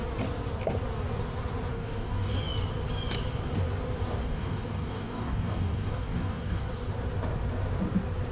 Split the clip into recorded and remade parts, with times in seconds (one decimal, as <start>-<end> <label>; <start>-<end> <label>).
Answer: 0.0-1.7 recorded; 1.7-2.4 remade; 2.4-4.2 recorded; 4.2-6.7 remade; 6.7-8.3 recorded